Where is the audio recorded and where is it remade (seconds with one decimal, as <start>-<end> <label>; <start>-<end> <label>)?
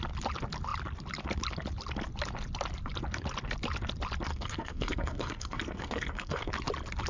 0.0-4.3 recorded; 4.3-6.5 remade; 6.5-7.1 recorded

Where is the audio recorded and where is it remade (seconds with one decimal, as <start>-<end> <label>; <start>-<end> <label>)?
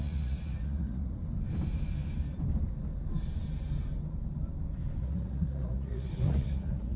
0.0-1.2 remade; 1.2-5.0 recorded; 5.0-7.0 remade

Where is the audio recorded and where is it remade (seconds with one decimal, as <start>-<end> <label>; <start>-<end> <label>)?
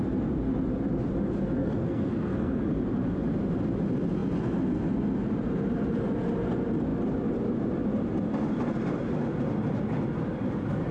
0.0-1.6 recorded; 1.6-2.6 remade; 2.6-10.9 recorded